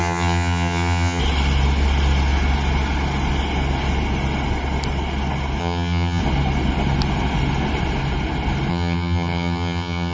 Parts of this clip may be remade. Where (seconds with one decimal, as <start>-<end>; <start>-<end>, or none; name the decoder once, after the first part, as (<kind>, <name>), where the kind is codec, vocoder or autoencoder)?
0.0-1.2 (vocoder, HiFi-GAN); 5.6-6.2; 8.7-10.1